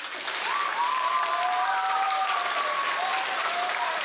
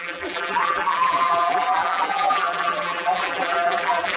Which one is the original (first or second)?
first